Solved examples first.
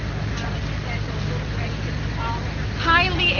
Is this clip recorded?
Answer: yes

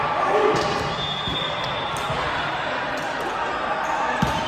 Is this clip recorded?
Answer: yes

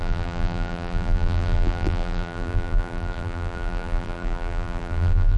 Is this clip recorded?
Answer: no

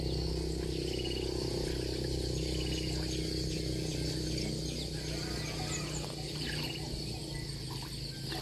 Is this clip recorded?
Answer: yes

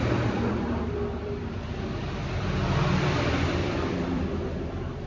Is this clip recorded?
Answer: no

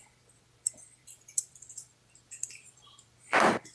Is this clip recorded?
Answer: no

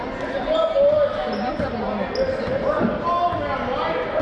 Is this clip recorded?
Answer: yes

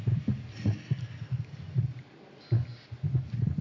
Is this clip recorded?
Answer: yes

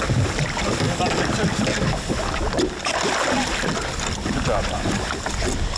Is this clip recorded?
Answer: yes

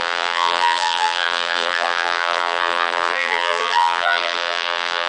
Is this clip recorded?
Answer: no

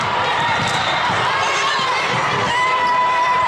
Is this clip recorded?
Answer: no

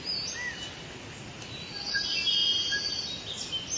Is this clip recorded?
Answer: yes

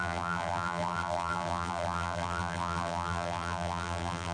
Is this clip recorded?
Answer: no